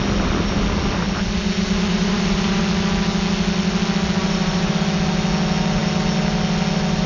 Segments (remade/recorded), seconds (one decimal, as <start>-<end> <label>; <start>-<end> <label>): 0.0-1.9 recorded; 1.9-2.6 remade; 2.6-4.2 recorded; 4.2-4.7 remade; 4.7-7.1 recorded